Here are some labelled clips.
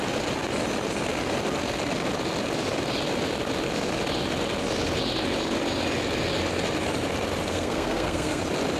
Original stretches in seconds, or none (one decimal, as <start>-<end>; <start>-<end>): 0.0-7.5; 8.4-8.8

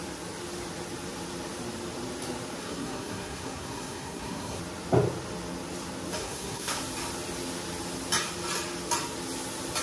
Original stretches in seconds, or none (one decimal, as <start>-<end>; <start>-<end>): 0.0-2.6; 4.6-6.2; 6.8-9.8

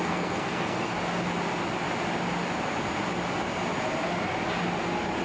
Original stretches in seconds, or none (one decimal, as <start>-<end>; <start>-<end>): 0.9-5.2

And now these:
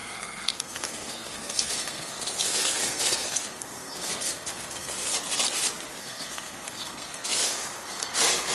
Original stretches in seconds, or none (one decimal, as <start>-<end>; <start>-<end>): 5.1-6.0

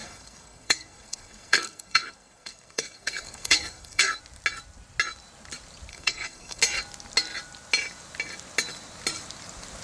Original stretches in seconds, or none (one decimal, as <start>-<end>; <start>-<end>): 4.2-5.9; 6.6-9.8

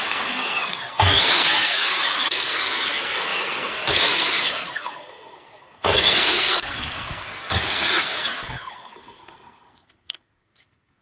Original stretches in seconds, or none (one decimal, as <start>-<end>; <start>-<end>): none

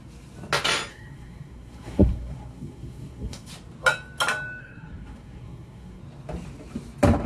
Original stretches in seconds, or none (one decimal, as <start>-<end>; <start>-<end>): 0.0-0.9; 3.5-4.6; 6.0-7.3

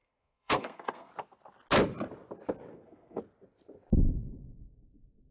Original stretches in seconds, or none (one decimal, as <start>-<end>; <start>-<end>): 1.1-2.7; 3.2-5.3